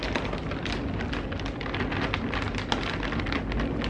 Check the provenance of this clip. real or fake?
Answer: real